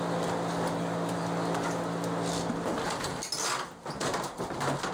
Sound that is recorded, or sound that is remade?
recorded